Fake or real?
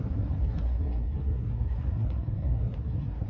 fake